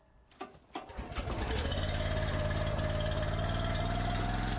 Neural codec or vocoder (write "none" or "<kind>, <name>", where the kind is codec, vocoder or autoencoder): none